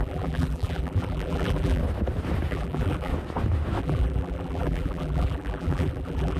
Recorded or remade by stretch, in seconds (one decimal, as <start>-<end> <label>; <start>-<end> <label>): 0.0-1.8 remade; 1.8-2.5 recorded; 2.5-3.1 remade; 3.1-3.8 recorded; 3.8-6.4 remade